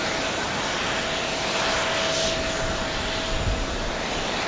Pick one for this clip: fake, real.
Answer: real